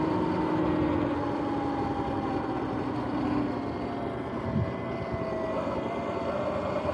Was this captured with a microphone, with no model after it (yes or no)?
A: yes